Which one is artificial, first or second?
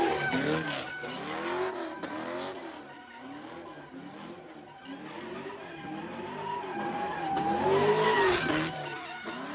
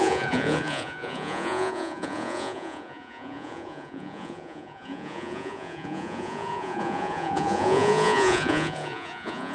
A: second